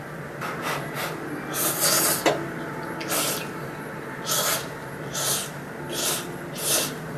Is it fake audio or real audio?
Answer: real